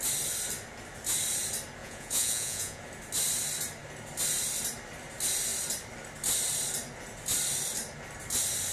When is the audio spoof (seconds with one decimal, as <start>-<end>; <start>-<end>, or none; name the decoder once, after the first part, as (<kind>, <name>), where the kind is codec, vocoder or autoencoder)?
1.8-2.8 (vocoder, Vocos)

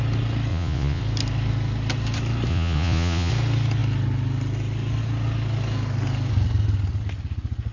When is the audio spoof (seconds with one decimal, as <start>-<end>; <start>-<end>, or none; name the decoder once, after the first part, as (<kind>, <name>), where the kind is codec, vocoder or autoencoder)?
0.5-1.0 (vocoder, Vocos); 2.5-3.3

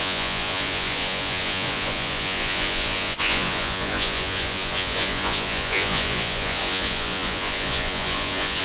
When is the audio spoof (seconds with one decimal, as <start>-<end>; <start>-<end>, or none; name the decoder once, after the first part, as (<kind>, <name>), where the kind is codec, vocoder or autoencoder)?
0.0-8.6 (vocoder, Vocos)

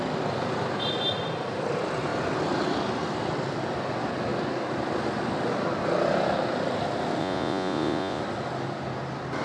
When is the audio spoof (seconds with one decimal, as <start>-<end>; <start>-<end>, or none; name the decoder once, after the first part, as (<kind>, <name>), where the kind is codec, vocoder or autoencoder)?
7.2-8.2 (vocoder, Vocos)

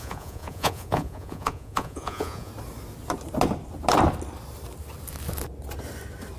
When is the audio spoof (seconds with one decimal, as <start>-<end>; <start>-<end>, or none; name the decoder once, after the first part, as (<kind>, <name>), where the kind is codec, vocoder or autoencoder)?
0.0-2.5 (vocoder, Vocos)